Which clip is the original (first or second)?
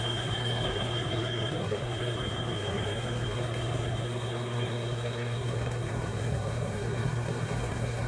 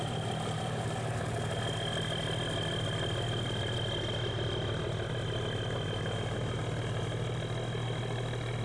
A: second